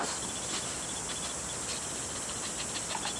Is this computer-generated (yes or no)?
no